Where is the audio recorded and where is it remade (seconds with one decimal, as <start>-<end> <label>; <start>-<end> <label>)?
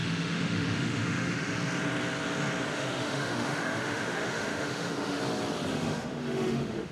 0.0-1.5 remade; 1.5-2.7 recorded; 2.7-5.2 remade; 5.2-5.7 recorded; 5.7-6.9 remade